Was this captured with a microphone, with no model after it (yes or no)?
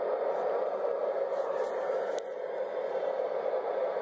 yes